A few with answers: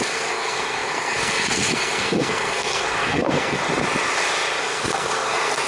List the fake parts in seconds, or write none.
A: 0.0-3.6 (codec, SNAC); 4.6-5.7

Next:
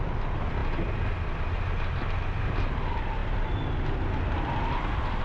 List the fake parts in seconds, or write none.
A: none

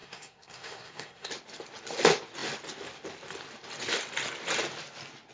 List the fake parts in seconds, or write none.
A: 0.0-1.3 (codec, SNAC)

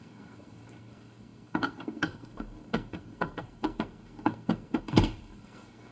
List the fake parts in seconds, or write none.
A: 0.0-5.9 (codec, SNAC)